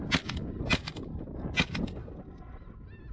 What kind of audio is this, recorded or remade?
recorded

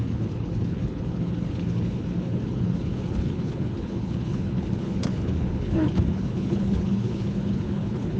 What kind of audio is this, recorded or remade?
remade